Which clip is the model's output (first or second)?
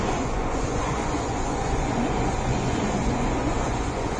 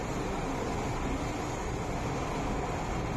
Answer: first